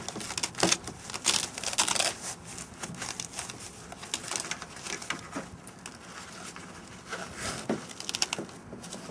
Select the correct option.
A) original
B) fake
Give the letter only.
A